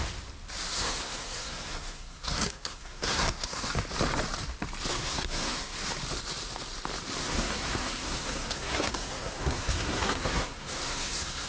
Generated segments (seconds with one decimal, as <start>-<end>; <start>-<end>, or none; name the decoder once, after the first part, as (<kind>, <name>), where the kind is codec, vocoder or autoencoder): 0.7-3.7 (codec, SNAC); 4.9-5.8; 7.2-11.5

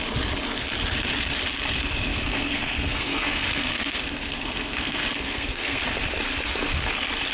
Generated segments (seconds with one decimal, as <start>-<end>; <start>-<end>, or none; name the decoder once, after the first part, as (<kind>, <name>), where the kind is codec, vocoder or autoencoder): 2.1-5.8 (codec, SNAC)

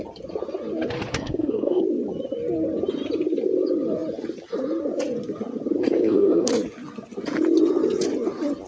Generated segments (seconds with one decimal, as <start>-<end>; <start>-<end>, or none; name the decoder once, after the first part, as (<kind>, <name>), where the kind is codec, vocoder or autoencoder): 1.1-1.8 (codec, SNAC); 5.8-6.5

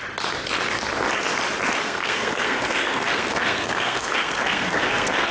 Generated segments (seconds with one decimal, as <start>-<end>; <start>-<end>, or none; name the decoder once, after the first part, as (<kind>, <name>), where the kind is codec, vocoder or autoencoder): 1.8-5.3 (codec, SNAC)

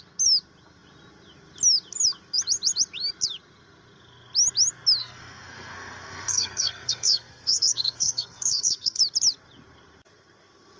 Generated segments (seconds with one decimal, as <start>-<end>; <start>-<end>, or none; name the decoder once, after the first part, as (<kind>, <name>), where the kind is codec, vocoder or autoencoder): 5.0-9.0 (codec, SNAC)

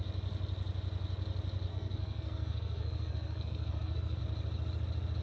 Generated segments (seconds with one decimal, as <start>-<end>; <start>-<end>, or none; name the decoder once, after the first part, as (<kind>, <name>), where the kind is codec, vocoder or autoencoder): 1.7-4.2 (codec, SNAC)

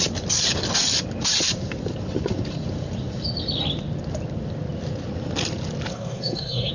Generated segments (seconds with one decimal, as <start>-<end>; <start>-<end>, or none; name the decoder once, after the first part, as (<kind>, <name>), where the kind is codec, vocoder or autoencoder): 5.9-6.7 (codec, SNAC)